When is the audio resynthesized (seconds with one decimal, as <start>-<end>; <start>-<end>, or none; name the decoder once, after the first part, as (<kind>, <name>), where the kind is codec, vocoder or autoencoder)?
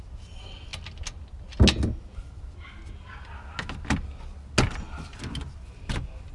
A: none